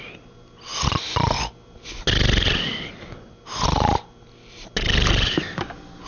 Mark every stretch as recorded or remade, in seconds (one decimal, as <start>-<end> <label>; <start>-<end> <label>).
0.0-6.1 recorded